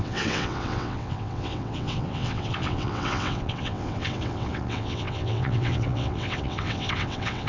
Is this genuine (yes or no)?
no